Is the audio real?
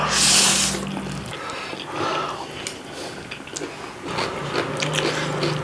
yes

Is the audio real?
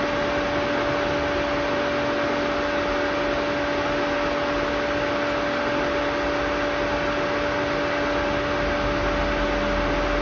yes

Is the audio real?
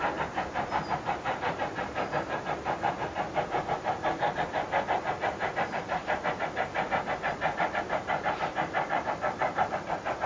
yes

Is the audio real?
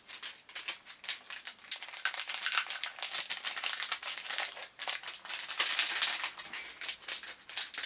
yes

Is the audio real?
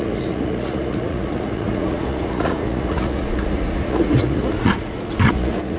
no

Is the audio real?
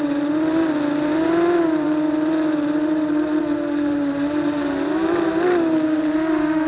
no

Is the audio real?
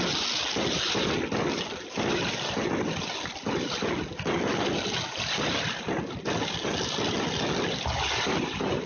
yes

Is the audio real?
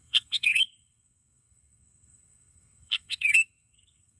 no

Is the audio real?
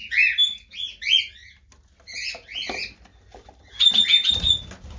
yes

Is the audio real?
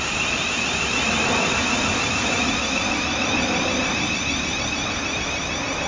yes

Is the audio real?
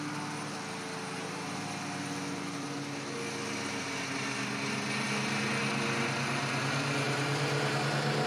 yes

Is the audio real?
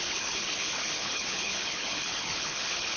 no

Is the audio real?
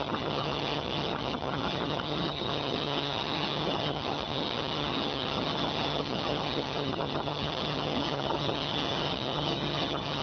no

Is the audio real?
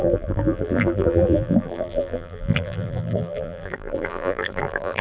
no